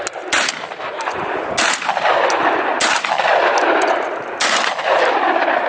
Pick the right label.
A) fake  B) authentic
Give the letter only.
B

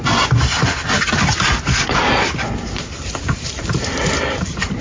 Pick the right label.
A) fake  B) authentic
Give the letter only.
B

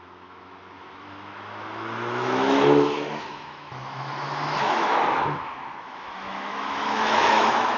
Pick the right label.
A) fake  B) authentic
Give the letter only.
A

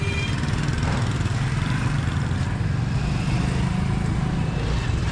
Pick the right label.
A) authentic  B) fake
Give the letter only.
A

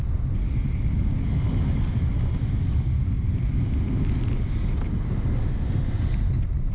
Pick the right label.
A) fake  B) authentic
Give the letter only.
B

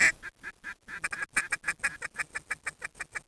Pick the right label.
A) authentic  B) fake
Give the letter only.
A